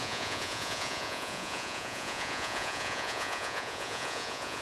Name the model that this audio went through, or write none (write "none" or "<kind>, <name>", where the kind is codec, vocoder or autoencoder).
vocoder, Vocos